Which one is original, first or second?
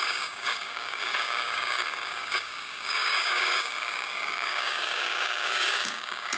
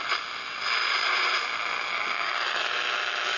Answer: second